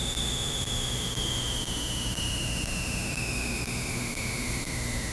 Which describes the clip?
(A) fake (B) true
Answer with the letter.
A